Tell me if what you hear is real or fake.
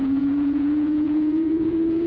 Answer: fake